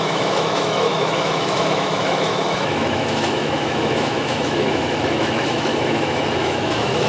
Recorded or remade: remade